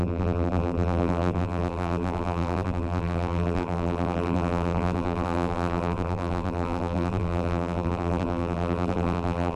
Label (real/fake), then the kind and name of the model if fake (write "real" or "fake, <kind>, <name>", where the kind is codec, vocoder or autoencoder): fake, vocoder, BigVGAN v2